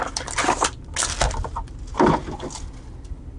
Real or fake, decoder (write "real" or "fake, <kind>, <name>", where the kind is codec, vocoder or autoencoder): real